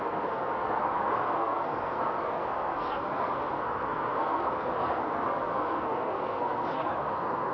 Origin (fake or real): fake